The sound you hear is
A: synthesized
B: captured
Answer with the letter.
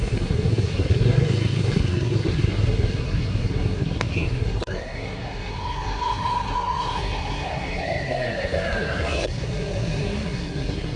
A